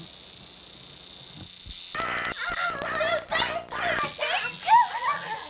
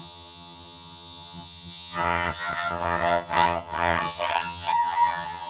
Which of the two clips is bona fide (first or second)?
first